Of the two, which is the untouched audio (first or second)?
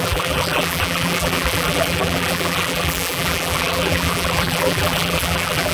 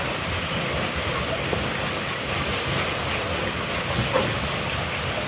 second